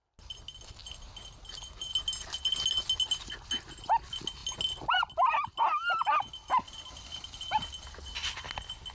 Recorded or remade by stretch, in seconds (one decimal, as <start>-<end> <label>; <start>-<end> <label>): 0.0-8.9 recorded